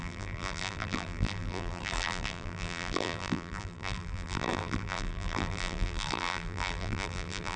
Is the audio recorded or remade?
remade